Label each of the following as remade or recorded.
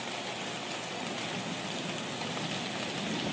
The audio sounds recorded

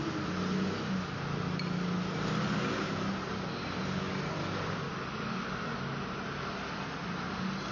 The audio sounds recorded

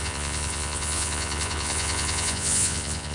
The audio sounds remade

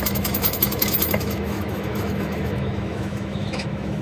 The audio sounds remade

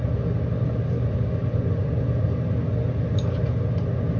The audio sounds recorded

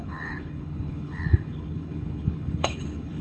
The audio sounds remade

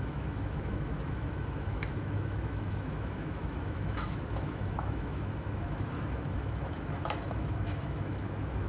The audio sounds remade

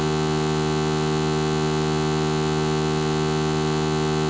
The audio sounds recorded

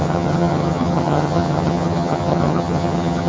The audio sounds remade